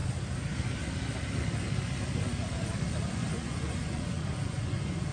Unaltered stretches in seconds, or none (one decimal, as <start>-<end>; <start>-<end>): 0.0-3.1